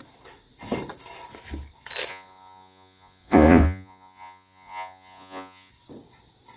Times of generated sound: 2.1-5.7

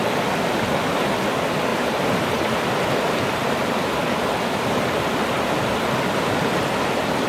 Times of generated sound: 1.7-2.3